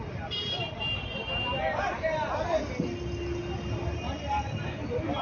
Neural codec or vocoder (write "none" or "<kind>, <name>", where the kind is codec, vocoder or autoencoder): none